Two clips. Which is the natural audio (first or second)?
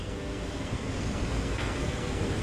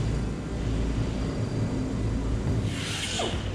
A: second